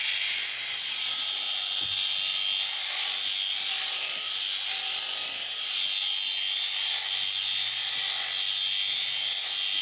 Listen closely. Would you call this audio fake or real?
real